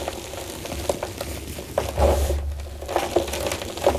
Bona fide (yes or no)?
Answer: yes